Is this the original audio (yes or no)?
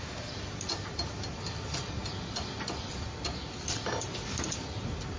yes